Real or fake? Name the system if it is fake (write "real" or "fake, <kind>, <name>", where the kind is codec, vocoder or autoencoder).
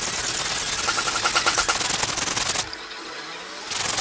real